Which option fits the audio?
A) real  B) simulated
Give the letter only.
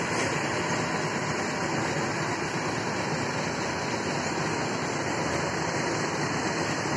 A